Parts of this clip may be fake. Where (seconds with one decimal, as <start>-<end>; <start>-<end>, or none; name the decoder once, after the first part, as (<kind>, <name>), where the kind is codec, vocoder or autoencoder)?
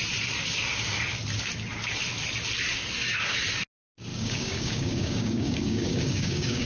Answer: 4.1-6.7 (codec, DAC)